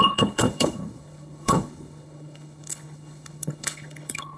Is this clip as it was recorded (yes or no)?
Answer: no